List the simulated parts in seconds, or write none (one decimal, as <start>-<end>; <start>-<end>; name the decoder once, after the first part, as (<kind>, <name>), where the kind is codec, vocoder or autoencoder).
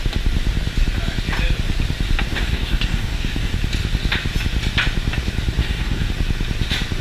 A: 2.3-3.5 (codec, DAC); 5.6-6.1